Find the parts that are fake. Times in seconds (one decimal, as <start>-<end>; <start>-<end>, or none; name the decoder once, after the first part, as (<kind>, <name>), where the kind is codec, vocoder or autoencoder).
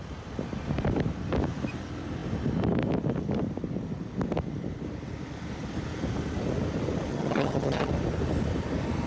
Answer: 7.1-7.9 (vocoder, HiFi-GAN)